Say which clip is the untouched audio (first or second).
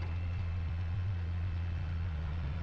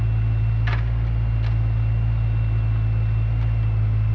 second